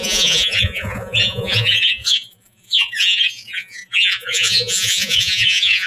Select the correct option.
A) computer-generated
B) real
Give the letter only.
A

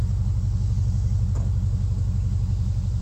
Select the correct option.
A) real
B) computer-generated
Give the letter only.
A